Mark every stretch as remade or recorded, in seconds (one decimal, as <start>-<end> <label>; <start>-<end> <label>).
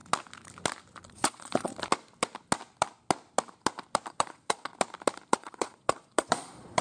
0.0-1.1 recorded; 1.1-1.7 remade; 1.7-4.1 recorded; 4.1-4.7 remade; 4.7-5.3 recorded; 5.3-6.8 remade